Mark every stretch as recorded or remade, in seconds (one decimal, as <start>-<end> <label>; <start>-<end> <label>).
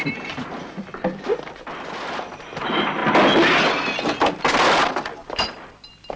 0.0-2.4 remade; 2.4-5.2 recorded; 5.2-5.7 remade; 5.7-6.2 recorded